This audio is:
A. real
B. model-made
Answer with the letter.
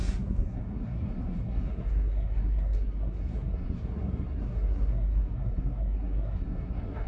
B